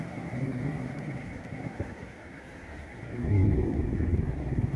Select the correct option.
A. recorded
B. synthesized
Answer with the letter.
B